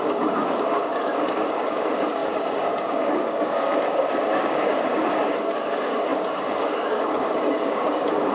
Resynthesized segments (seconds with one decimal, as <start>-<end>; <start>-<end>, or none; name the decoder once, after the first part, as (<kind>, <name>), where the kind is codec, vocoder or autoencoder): 0.0-8.3 (codec, DAC)